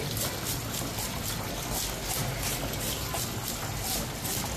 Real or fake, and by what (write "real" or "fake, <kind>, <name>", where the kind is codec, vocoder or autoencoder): real